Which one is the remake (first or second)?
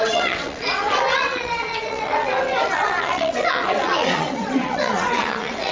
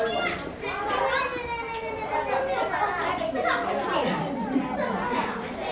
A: first